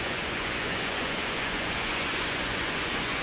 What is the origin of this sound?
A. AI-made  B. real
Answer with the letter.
A